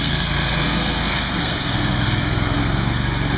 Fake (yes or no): yes